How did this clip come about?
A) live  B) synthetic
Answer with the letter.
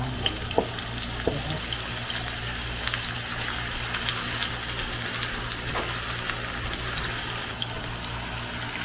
A